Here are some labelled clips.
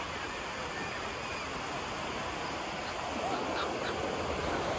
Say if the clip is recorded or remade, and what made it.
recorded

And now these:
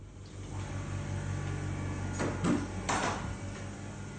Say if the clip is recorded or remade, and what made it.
recorded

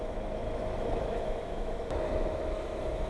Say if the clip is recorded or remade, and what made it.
remade, autoencoder, DAC-VAE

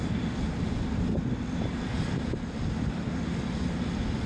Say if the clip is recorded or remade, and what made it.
recorded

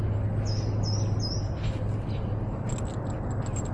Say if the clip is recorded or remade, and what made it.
recorded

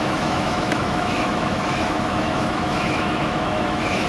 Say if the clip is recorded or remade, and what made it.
remade, autoencoder, DAC-VAE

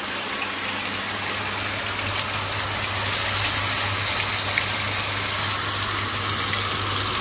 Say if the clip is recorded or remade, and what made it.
recorded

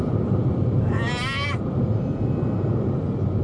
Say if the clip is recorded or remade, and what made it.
recorded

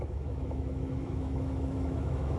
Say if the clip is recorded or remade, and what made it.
remade, autoencoder, DAC-VAE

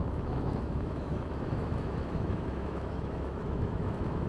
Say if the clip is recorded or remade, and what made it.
remade, autoencoder, DAC-VAE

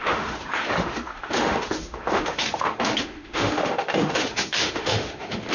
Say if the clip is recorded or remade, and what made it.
remade, autoencoder, DAC-VAE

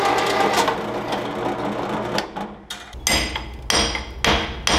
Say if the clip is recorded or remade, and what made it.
recorded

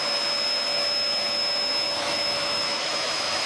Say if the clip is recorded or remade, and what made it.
remade, autoencoder, DAC-VAE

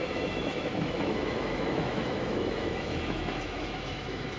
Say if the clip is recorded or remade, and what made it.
remade, autoencoder, DAC-VAE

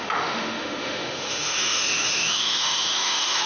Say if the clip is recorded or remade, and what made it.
remade, autoencoder, DAC-VAE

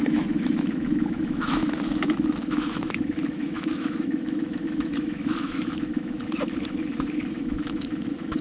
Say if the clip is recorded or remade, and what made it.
remade, autoencoder, DAC-VAE